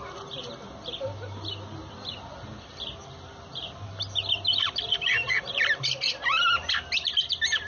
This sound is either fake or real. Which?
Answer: real